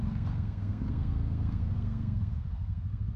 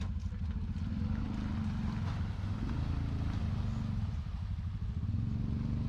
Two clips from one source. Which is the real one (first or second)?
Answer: second